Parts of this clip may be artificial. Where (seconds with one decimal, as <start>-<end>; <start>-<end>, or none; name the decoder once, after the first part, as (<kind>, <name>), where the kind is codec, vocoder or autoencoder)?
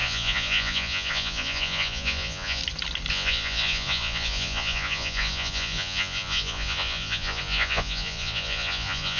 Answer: 0.0-2.6 (vocoder, Vocos); 3.1-9.2